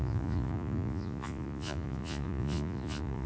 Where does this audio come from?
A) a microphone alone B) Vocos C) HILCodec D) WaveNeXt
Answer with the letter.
B